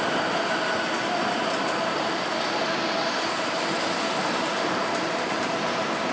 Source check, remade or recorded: recorded